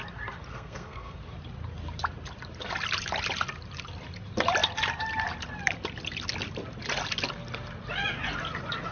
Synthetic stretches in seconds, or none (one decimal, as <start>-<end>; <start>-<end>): 0.5-1.2